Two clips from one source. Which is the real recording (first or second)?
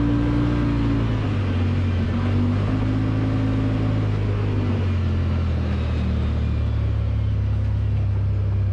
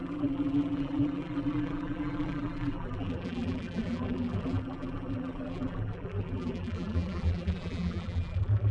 first